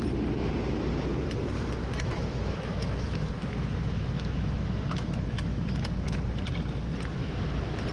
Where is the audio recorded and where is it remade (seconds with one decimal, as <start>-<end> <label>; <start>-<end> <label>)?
0.0-1.8 recorded; 1.8-6.2 remade; 6.2-7.9 recorded